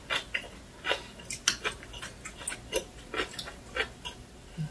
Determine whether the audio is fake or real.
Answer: real